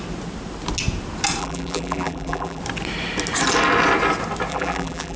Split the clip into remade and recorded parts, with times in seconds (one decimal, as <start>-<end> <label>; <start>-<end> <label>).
0.0-1.4 recorded; 1.4-2.6 remade; 2.6-4.5 recorded; 4.5-5.2 remade

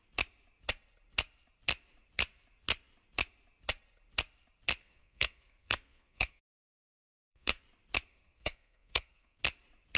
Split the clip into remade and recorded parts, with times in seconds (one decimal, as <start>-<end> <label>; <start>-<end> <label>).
0.0-4.8 recorded; 4.8-6.4 remade; 6.4-6.9 recorded; 6.9-7.6 remade; 7.6-8.1 recorded; 8.1-9.4 remade; 9.4-10.0 recorded

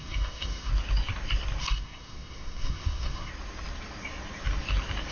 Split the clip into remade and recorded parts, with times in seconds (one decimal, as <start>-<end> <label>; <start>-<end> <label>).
0.0-0.7 remade; 0.7-1.6 recorded; 1.6-3.3 remade; 3.3-5.1 recorded

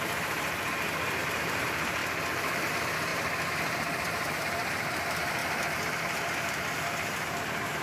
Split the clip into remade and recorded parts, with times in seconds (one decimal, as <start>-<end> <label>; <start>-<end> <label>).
0.0-2.0 remade; 2.0-2.7 recorded; 2.7-5.4 remade; 5.4-6.0 recorded; 6.0-7.8 remade

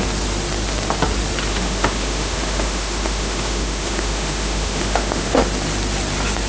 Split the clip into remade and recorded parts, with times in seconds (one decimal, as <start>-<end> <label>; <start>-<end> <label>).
0.0-1.5 recorded; 1.5-5.4 remade; 5.4-6.5 recorded

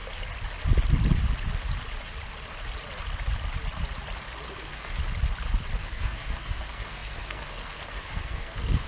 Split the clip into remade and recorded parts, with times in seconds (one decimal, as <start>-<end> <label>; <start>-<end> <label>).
0.0-4.6 recorded; 4.6-5.0 remade; 5.0-5.8 recorded; 5.8-8.9 remade